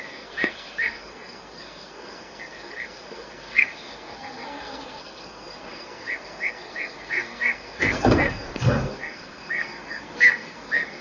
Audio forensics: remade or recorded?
remade